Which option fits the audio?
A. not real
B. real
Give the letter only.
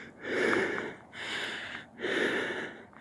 B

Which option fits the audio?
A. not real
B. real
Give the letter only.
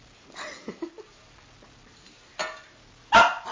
B